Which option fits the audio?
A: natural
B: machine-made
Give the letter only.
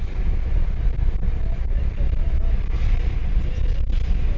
B